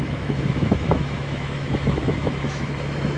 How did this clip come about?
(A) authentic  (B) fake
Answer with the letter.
B